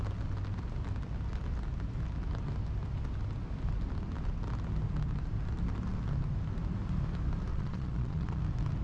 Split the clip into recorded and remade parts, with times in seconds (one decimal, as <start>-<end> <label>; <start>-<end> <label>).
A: 0.0-7.5 recorded; 7.5-8.4 remade; 8.4-8.8 recorded